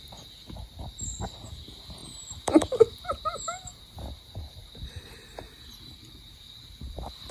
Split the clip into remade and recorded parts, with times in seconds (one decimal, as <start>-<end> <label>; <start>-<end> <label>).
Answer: 0.0-7.3 recorded